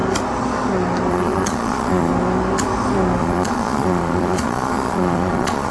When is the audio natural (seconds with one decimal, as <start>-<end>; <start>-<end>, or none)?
0.0-1.1; 2.1-3.2